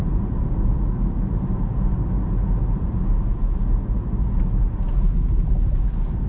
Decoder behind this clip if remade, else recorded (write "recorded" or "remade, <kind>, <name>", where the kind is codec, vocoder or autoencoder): recorded